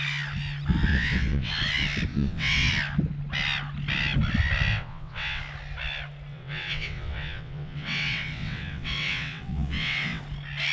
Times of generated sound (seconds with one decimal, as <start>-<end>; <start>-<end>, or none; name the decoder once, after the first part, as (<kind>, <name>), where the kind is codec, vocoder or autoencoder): 0.9-1.5 (vocoder, WaveNeXt); 2.1-2.7; 4.7-5.4; 6.3-10.2